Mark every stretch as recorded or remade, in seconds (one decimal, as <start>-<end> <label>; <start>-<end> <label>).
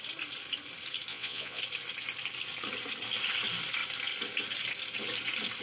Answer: 0.0-1.1 recorded; 1.1-1.6 remade; 1.6-5.6 recorded